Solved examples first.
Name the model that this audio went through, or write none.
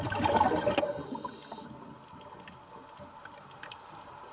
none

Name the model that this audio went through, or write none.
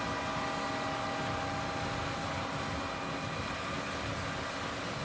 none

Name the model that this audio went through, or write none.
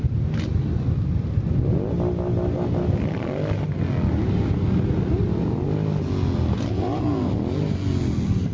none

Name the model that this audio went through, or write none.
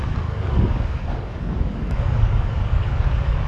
codec, DAC